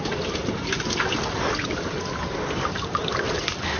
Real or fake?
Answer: real